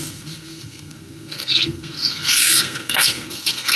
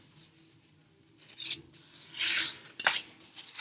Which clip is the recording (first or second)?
second